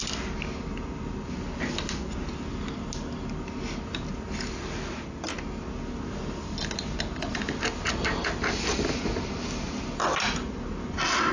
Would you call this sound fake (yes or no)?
no